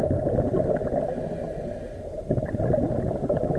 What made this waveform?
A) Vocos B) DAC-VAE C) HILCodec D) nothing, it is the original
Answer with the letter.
D